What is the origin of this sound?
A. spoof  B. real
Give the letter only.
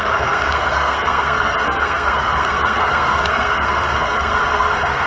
A